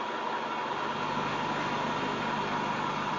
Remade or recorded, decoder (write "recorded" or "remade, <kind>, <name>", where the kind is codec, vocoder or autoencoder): recorded